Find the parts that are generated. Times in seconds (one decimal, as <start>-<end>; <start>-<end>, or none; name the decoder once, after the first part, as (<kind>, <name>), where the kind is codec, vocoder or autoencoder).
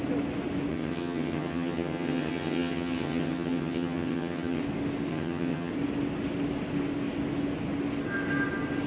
0.7-4.6 (vocoder, HiFi-GAN); 5.1-5.7